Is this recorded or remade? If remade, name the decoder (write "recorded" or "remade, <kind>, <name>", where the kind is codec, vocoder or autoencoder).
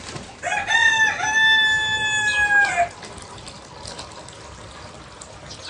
recorded